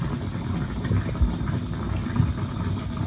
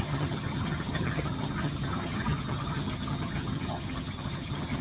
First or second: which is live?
first